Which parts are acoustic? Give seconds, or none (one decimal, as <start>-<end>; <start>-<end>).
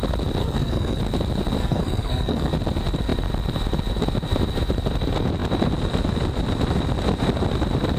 0.0-0.4; 1.0-1.6; 2.5-8.0